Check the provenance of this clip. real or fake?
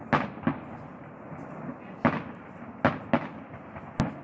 real